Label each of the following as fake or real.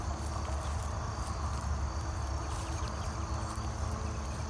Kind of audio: real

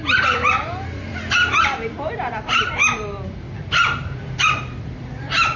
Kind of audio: fake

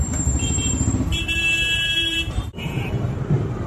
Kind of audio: fake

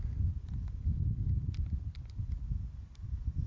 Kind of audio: real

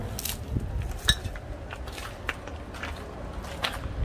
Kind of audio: real